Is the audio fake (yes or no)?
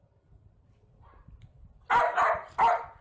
yes